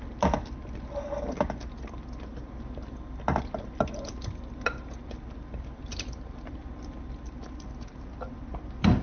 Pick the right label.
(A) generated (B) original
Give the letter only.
B